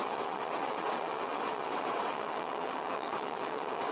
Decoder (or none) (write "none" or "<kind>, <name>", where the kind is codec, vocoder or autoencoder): vocoder, WaveNeXt